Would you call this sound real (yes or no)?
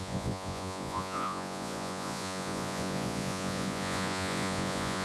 no